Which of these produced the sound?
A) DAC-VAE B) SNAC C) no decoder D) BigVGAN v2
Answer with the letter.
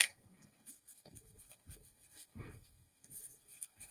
B